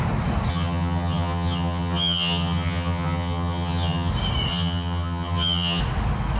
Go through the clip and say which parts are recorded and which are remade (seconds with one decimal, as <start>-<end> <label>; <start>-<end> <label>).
0.0-0.5 recorded; 0.5-4.1 remade; 4.1-4.5 recorded; 4.5-5.8 remade; 5.8-6.4 recorded